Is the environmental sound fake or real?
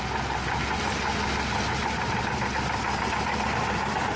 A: real